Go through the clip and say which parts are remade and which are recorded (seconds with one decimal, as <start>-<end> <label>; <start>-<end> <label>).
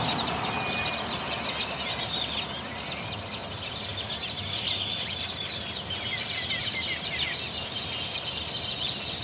0.0-9.2 recorded